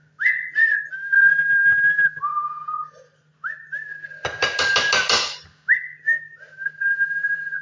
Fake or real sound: real